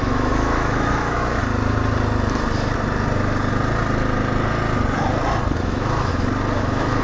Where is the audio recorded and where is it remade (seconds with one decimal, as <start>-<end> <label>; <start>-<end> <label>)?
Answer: 0.0-1.4 remade; 1.4-5.6 recorded; 5.6-6.1 remade; 6.1-6.6 recorded; 6.6-7.0 remade

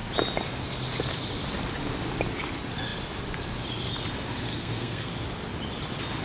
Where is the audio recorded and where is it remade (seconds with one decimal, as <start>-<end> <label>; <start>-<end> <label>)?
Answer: 0.0-4.5 recorded; 4.5-5.1 remade; 5.1-6.2 recorded

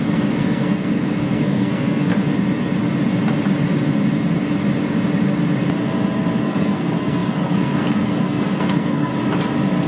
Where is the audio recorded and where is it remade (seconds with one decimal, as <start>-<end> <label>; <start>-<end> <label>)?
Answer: 0.0-2.1 remade; 2.1-6.4 recorded; 6.4-9.1 remade; 9.1-9.9 recorded

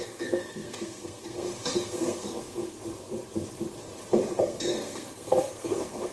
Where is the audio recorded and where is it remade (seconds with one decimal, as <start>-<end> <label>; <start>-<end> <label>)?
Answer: 0.0-2.8 remade; 2.8-4.4 recorded; 4.4-6.1 remade

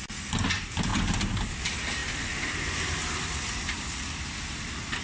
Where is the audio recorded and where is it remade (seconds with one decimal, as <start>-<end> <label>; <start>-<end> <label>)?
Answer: 0.0-0.9 remade; 0.9-1.5 recorded; 1.5-2.0 remade; 2.0-3.1 recorded; 3.1-5.0 remade

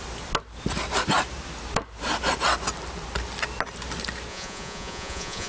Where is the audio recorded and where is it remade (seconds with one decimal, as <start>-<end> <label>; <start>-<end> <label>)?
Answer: 0.0-4.3 recorded; 4.3-5.5 remade

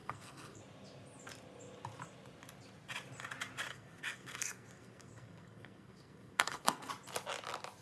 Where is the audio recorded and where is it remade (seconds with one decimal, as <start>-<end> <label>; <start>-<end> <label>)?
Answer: 0.0-0.6 remade; 0.6-3.7 recorded; 3.7-6.9 remade; 6.9-7.8 recorded